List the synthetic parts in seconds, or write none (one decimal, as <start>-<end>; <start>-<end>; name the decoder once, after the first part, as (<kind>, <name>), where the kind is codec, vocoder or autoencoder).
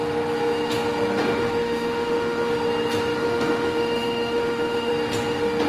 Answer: 1.4-2.5 (autoencoder, DAC-VAE); 3.2-4.9